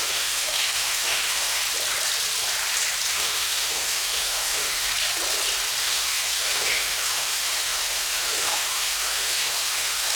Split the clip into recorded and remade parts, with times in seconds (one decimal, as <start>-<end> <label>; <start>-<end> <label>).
0.0-1.6 remade; 1.6-3.1 recorded; 3.1-4.9 remade; 4.9-5.8 recorded; 5.8-10.2 remade